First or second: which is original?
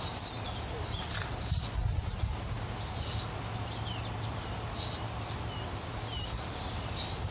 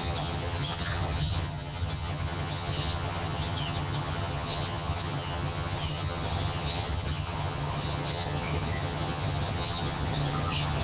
first